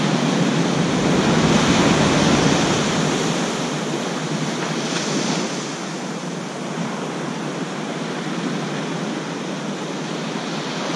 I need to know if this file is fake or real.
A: real